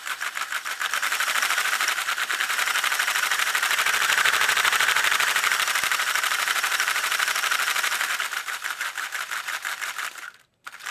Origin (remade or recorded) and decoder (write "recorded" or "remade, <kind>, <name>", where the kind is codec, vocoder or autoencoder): remade, vocoder, BigVGAN v2